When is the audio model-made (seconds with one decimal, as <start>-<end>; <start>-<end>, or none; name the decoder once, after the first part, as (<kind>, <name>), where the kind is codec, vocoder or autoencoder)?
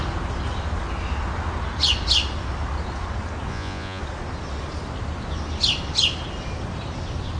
3.5-4.0 (vocoder, Vocos)